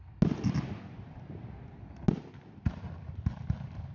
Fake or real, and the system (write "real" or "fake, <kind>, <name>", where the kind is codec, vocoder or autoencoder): real